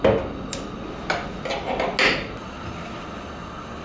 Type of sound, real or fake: real